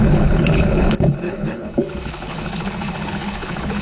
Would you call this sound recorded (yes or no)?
no